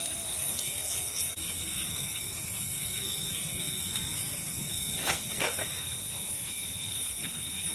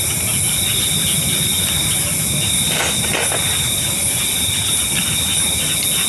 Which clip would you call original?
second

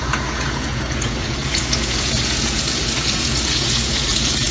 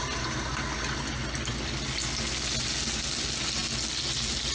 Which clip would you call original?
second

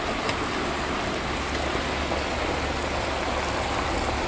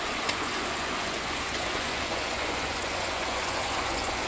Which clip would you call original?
first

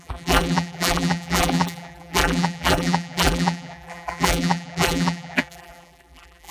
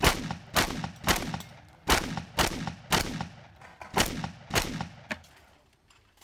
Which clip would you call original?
second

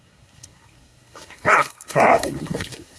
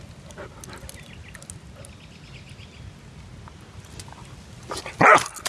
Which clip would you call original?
second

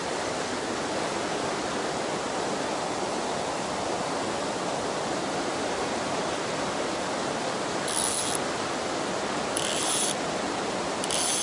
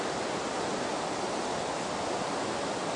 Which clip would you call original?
second